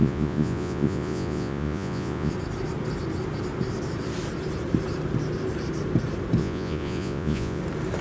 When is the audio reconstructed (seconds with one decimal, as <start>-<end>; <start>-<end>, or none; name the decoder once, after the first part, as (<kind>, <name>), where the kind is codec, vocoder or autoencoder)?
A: 0.0-2.3 (vocoder, Vocos); 6.4-7.6